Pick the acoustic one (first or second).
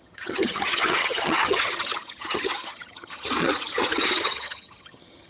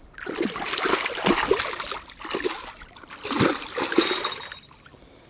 second